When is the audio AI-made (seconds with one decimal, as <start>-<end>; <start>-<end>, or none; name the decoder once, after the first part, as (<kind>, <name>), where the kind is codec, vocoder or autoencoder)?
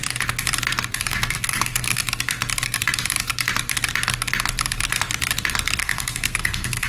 1.1-2.0 (codec, SNAC); 5.8-6.9